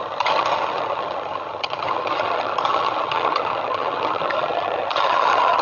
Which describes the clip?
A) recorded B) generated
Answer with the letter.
B